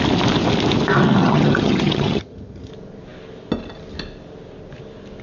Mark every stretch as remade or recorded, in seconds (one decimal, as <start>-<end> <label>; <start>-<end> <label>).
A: 0.0-1.2 recorded; 1.2-2.7 remade; 2.7-5.2 recorded